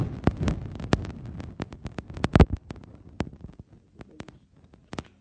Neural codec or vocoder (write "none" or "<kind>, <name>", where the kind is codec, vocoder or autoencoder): none